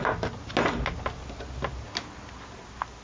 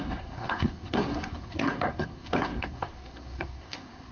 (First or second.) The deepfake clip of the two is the second